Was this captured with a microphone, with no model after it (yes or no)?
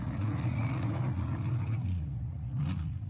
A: no